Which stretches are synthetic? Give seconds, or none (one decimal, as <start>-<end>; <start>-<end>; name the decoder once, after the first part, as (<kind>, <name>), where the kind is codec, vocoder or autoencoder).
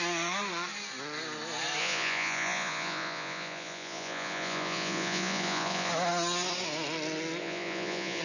1.8-5.9 (vocoder, Vocos); 7.4-8.2